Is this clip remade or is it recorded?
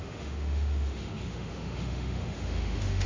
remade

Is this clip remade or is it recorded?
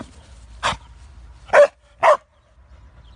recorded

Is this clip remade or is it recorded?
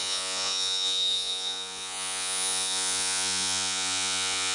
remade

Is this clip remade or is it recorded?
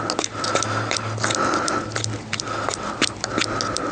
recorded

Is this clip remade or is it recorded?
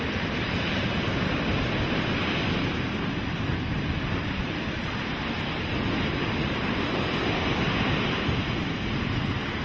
recorded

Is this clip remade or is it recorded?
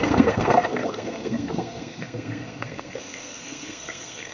remade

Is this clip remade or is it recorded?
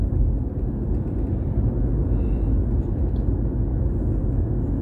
recorded